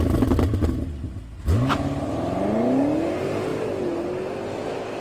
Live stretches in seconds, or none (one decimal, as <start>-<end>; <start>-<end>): 0.0-5.0